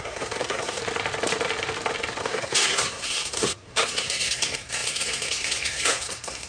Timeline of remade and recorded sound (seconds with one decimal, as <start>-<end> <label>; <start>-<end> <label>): 0.0-0.8 remade; 0.8-2.2 recorded; 2.2-6.5 remade